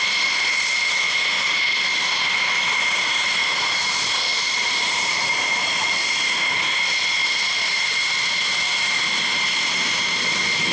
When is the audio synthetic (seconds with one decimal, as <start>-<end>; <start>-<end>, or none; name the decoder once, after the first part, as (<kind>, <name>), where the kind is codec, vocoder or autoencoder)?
4.3-6.1 (vocoder, BigVGAN v2)